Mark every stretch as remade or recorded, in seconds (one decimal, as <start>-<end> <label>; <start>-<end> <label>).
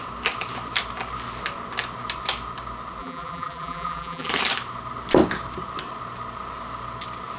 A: 0.0-3.0 recorded; 3.0-4.3 remade; 4.3-7.4 recorded